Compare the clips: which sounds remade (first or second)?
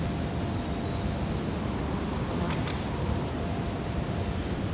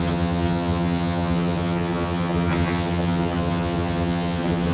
second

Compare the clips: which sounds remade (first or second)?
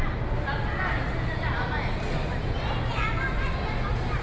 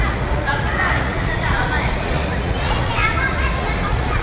second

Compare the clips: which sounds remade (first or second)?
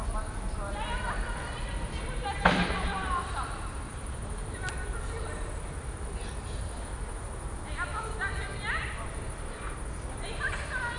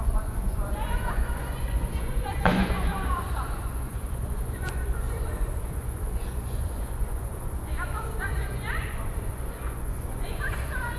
second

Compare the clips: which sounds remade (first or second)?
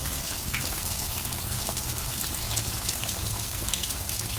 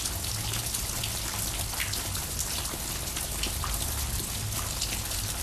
first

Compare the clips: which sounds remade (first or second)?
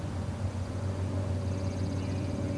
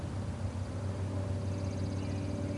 first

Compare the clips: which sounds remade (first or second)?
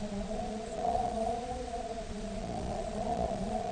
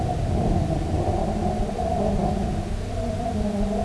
first